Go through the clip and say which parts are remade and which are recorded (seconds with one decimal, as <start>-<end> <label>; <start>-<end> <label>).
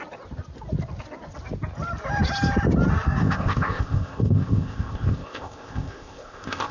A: 0.0-3.2 recorded; 3.2-6.7 remade